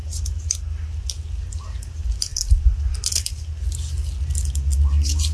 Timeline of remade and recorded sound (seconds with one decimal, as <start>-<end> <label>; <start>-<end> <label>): 0.0-5.3 recorded